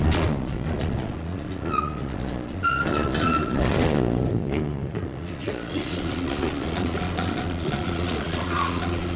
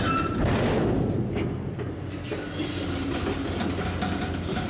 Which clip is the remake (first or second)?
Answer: first